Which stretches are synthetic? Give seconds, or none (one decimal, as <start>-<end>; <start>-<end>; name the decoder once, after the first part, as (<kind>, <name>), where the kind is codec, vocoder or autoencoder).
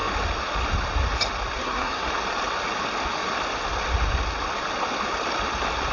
1.6-2.1 (codec, SNAC)